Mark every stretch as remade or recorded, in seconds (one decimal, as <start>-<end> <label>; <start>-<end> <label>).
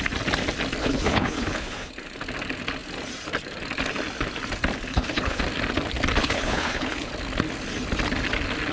0.0-0.8 recorded; 0.8-1.9 remade; 1.9-4.9 recorded; 4.9-5.4 remade; 5.4-6.2 recorded; 6.2-7.1 remade; 7.1-8.7 recorded